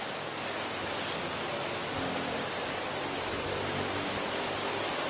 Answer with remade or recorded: recorded